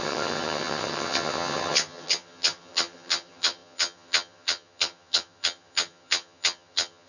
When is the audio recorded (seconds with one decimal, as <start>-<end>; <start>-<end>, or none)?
none